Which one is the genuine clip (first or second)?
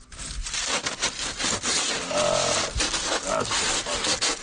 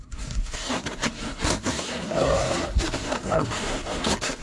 first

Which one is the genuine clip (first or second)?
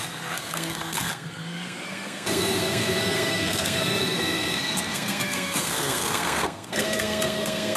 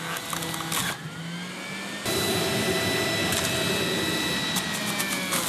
second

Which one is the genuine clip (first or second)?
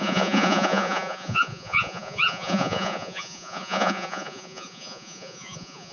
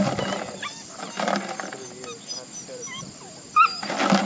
second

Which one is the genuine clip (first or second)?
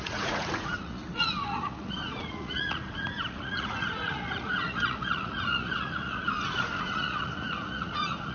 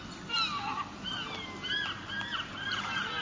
second